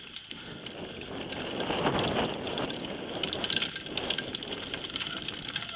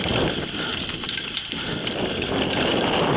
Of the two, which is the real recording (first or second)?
first